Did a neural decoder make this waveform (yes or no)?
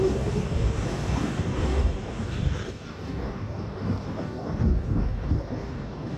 yes